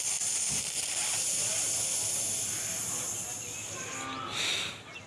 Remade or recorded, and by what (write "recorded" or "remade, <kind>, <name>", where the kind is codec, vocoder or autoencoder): recorded